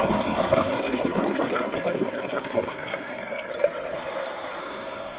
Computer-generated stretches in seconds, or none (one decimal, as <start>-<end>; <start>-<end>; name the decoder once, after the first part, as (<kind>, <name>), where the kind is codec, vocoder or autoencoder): 0.0-3.5 (codec, SNAC); 4.6-5.2